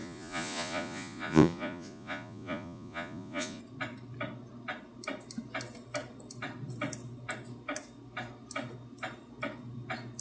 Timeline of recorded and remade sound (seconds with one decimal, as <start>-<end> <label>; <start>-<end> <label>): 0.0-3.6 remade; 3.6-10.2 recorded